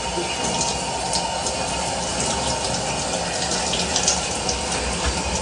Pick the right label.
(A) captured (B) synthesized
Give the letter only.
A